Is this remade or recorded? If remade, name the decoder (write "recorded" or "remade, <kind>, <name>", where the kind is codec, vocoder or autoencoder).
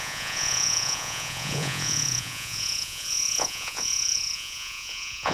remade, vocoder, Vocos